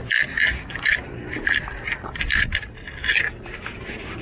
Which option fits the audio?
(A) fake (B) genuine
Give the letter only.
B